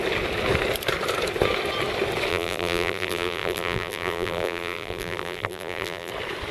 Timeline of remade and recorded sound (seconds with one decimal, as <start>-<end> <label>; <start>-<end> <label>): 0.0-2.3 recorded; 2.3-6.1 remade; 6.1-6.5 recorded